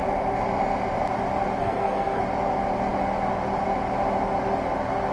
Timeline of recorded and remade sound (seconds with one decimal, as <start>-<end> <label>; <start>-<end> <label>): 0.0-1.6 recorded; 1.6-2.2 remade; 2.2-5.1 recorded